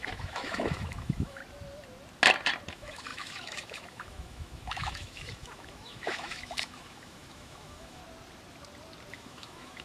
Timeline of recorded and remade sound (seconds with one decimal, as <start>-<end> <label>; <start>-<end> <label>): 0.0-1.4 remade; 1.4-2.7 recorded; 2.7-8.0 remade; 8.0-9.1 recorded; 9.1-9.8 remade